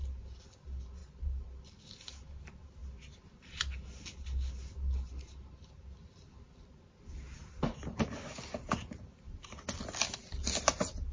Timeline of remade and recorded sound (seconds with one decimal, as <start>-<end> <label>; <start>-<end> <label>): 0.0-11.1 recorded